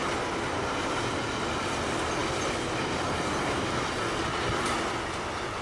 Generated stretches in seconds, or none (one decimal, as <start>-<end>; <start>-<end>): none